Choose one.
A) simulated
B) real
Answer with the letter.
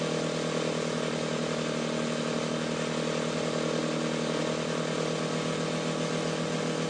B